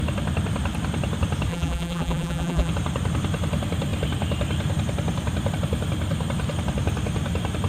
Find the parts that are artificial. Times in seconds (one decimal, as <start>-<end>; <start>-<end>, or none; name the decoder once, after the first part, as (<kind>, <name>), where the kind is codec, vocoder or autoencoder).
1.5-2.7 (vocoder, BigVGAN v2)